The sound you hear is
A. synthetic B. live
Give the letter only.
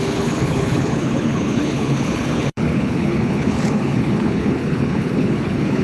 A